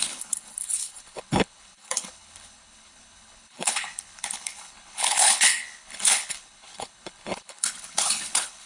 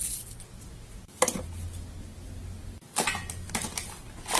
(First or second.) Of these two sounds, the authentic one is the second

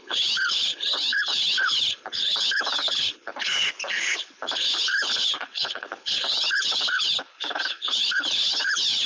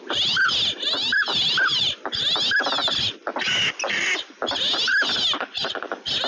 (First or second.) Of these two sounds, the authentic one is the second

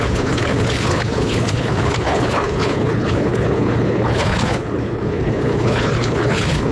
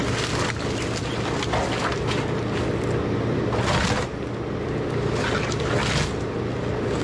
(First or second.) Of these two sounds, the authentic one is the second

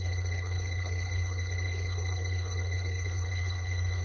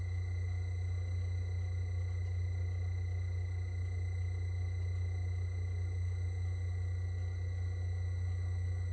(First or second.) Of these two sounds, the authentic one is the second